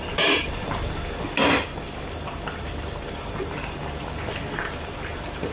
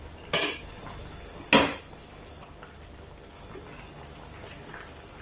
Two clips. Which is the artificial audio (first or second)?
first